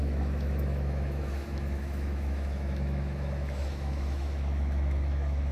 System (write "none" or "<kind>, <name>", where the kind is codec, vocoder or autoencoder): autoencoder, DAC-VAE